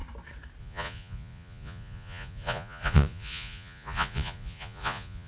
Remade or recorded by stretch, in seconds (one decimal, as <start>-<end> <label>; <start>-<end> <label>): 0.0-0.6 recorded; 0.6-5.3 remade